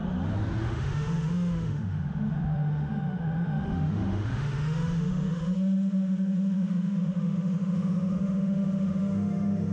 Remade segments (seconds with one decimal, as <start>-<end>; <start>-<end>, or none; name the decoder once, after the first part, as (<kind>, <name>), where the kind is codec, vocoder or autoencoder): 0.6-9.7 (autoencoder, DAC-VAE)